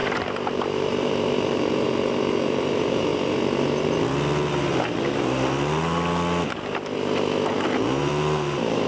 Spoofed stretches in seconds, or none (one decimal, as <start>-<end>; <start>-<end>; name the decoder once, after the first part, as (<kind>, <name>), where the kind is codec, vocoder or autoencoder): 0.0-3.1 (vocoder, BigVGAN v2); 8.0-8.9